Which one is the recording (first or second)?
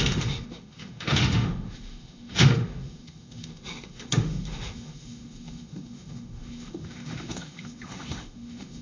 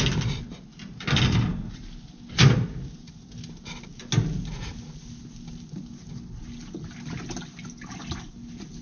second